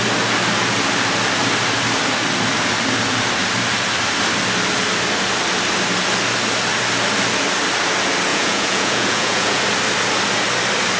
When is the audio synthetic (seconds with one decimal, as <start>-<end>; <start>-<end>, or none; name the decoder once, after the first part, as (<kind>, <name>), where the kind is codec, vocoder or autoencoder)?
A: 8.3-9.6 (vocoder, Vocos)